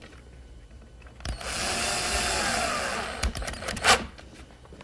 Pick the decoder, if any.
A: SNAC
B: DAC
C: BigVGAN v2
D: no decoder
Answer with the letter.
D